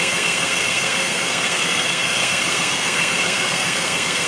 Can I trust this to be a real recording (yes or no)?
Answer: no